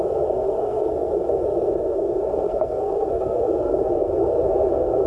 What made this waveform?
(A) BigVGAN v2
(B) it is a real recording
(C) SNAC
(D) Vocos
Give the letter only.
C